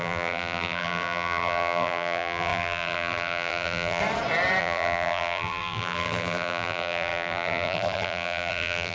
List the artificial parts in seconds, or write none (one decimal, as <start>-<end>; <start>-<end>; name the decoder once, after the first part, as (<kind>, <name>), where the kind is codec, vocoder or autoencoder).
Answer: 0.0-4.0 (vocoder, BigVGAN v2); 4.6-8.9